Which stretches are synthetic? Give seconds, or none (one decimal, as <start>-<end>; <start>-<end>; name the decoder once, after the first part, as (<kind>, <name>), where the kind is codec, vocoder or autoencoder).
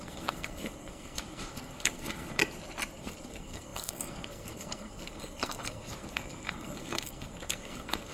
0.0-2.4 (codec, SNAC); 3.0-8.1